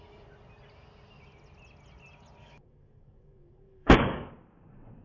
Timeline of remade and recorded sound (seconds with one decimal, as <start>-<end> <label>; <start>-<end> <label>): 0.0-2.4 recorded; 2.4-4.3 remade; 4.3-5.0 recorded